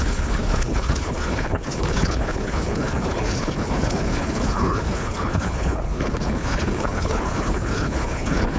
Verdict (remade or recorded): remade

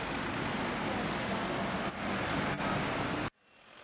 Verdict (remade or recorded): recorded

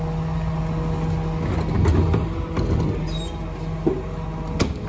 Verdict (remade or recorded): recorded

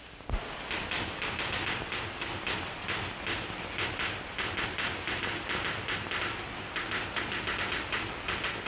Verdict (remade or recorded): recorded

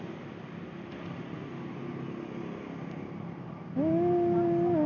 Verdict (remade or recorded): recorded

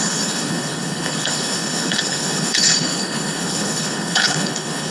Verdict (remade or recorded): remade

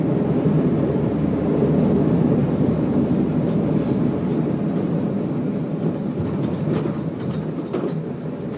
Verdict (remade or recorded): recorded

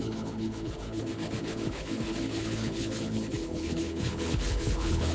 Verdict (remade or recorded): remade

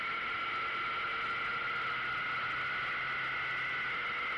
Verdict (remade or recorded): recorded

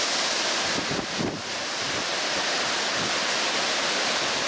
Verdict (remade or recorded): recorded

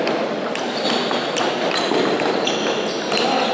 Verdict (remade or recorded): recorded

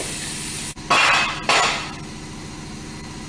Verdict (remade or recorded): recorded